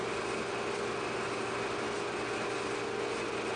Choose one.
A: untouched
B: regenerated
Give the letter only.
A